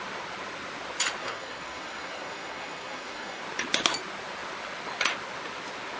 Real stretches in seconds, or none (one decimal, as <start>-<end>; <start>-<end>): 0.0-1.2; 3.4-6.0